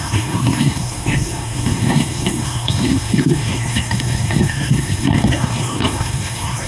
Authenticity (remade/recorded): remade